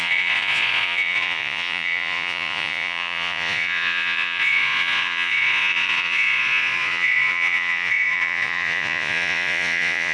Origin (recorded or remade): remade